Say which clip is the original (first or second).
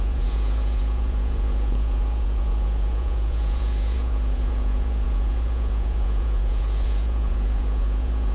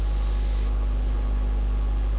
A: second